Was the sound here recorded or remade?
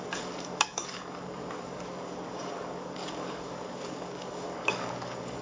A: remade